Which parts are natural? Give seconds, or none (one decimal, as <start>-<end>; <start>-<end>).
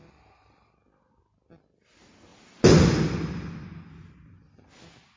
0.0-5.2